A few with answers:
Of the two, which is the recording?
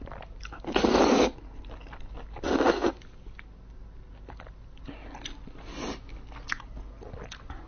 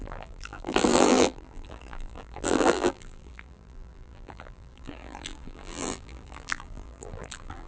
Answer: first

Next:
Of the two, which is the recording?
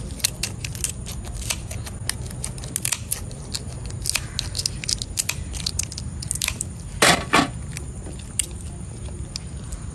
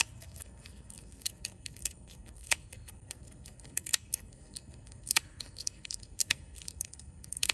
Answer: first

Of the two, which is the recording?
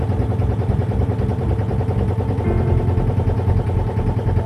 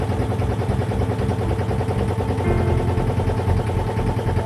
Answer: second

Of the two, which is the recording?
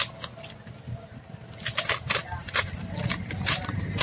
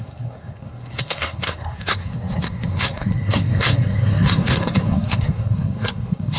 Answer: first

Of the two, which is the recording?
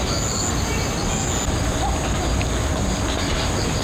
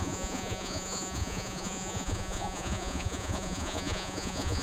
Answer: first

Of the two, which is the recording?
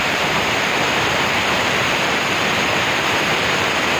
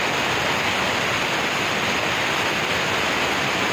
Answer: second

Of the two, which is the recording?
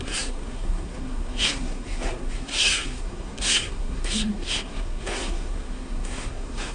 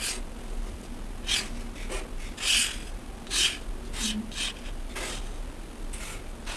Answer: second